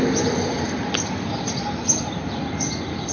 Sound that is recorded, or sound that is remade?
recorded